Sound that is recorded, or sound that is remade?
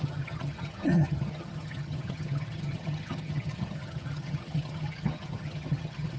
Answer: remade